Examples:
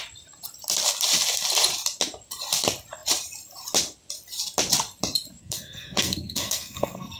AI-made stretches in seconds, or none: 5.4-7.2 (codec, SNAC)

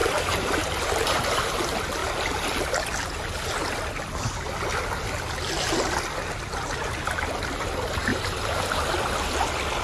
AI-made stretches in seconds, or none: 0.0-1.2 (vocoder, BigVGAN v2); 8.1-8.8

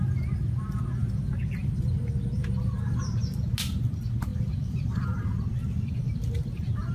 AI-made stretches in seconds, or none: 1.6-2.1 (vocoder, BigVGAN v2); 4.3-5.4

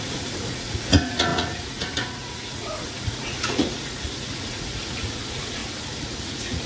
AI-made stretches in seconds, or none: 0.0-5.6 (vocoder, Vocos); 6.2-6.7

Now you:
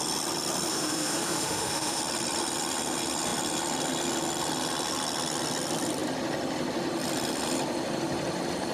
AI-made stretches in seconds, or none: 0.7-2.0 (autoencoder, DAC-VAE)

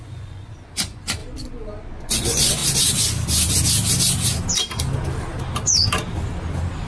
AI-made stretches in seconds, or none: 0.0-1.2 (vocoder, Vocos); 1.9-2.6